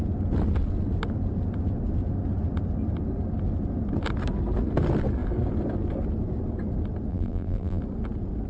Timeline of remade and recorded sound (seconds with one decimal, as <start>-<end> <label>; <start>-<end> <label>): 0.0-7.1 recorded; 7.1-7.8 remade; 7.8-8.5 recorded